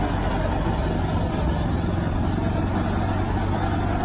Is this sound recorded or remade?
recorded